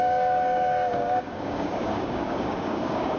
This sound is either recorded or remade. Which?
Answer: remade